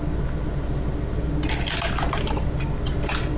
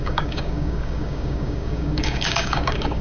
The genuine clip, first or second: first